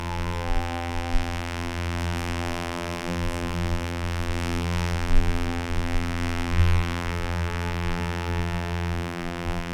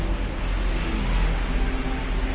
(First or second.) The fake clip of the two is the first